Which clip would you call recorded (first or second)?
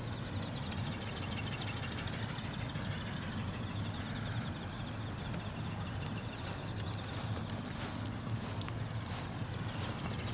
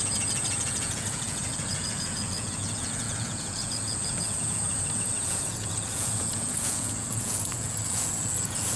first